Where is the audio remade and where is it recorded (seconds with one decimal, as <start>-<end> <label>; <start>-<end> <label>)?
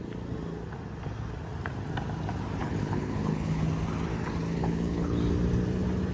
0.0-2.6 recorded; 2.6-3.7 remade; 3.7-4.6 recorded; 4.6-5.2 remade; 5.2-6.1 recorded